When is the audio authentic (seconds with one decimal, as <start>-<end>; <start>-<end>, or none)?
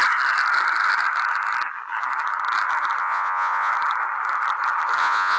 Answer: 0.0-3.0; 3.7-5.0